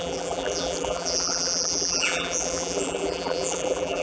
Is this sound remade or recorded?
remade